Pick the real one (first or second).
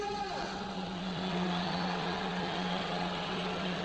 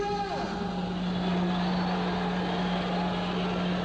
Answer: second